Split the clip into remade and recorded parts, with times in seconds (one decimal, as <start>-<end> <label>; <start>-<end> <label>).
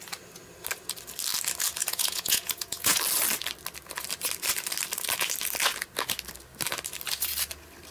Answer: 0.0-1.8 recorded; 1.8-3.0 remade; 3.0-7.9 recorded